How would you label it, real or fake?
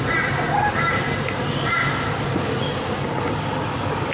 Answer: real